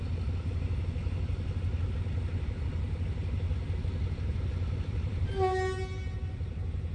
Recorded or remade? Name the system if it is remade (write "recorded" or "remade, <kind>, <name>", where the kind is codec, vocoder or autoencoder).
recorded